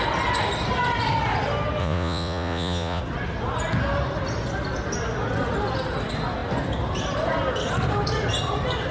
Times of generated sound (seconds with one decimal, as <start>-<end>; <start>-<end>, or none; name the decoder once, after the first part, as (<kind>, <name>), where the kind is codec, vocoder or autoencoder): 1.8-3.0 (vocoder, Vocos)